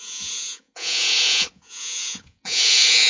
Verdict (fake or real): fake